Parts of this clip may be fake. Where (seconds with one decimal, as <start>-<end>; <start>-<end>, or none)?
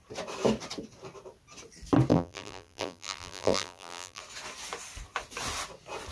2.1-4.2